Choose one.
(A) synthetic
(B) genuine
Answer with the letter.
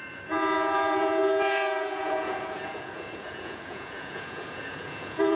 A